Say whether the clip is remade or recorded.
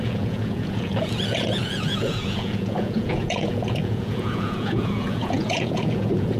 remade